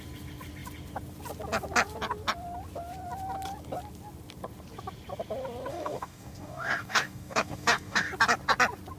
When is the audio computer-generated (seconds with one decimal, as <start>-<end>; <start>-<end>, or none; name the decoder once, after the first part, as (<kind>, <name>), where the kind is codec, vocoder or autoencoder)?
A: 5.7-8.1 (codec, DAC)